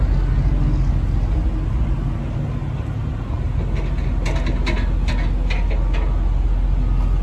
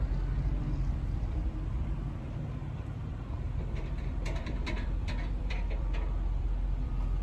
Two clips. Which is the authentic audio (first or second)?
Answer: first